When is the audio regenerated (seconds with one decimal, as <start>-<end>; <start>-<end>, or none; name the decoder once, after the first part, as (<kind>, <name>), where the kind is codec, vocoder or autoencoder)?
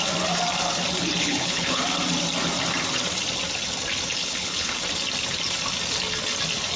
1.2-1.8 (codec, HILCodec); 4.2-4.8